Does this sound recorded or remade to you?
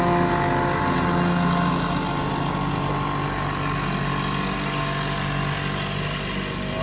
recorded